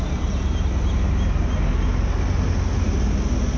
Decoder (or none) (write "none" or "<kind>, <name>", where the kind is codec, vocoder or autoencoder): none